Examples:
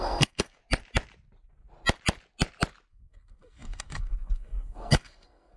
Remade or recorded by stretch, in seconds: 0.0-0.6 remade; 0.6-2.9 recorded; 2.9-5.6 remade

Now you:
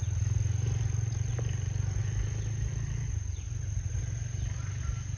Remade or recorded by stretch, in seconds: 0.0-5.2 recorded

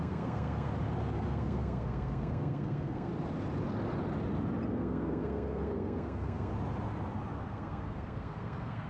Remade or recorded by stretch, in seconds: 0.0-0.7 remade; 0.7-1.3 recorded; 1.3-3.1 remade; 3.1-4.7 recorded; 4.7-6.5 remade; 6.5-7.4 recorded; 7.4-8.9 remade

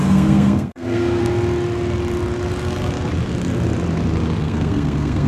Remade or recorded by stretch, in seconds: 0.0-1.2 remade; 1.2-4.4 recorded; 4.4-5.3 remade

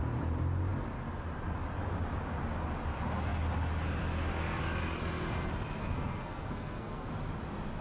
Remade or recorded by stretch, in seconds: 0.0-5.8 recorded; 5.8-7.1 remade; 7.1-7.8 recorded